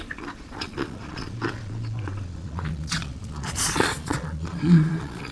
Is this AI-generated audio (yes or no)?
yes